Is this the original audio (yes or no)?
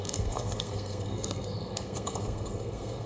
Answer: no